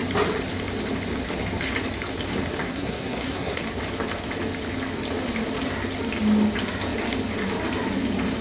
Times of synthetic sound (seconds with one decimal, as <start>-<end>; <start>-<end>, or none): 2.6-3.6

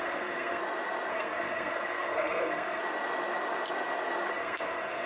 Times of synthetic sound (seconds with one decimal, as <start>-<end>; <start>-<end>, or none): 0.0-0.6; 1.1-2.8; 4.3-5.1